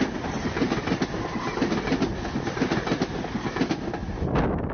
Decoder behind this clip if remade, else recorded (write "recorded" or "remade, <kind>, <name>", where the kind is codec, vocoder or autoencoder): recorded